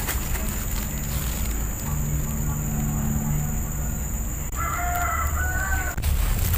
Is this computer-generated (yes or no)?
no